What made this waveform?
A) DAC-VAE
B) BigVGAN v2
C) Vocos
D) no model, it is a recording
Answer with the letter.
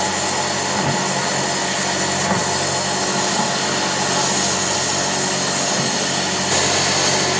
D